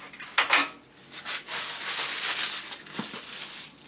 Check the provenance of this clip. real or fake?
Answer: real